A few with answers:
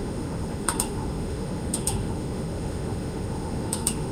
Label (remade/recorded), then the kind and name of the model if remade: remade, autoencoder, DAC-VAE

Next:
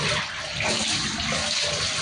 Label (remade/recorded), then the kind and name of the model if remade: recorded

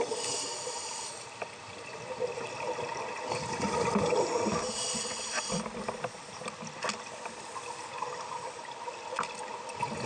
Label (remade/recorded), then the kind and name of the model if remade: recorded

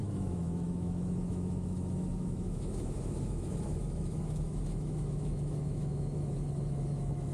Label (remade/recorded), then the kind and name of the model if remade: remade, autoencoder, DAC-VAE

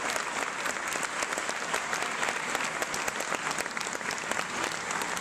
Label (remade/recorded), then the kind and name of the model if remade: recorded